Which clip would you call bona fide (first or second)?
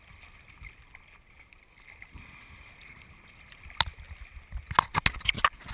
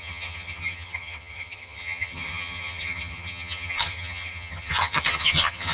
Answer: first